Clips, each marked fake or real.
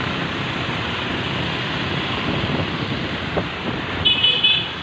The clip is fake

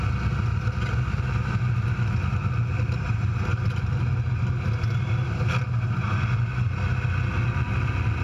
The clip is real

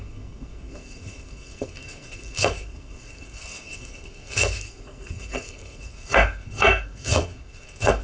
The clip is fake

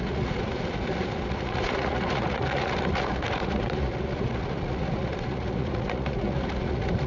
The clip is fake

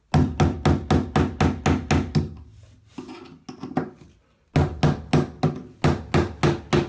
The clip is real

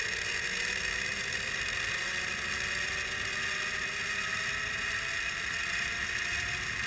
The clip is real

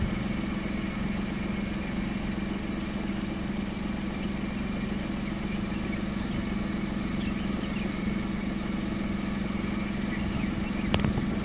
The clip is real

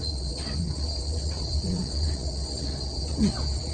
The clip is fake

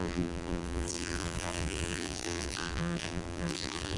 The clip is fake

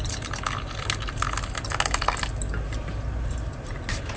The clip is real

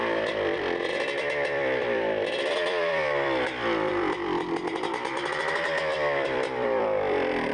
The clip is fake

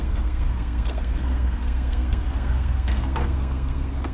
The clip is fake